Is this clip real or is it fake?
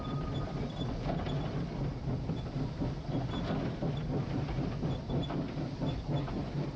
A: real